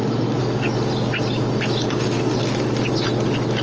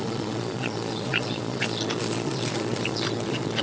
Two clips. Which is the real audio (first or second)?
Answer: first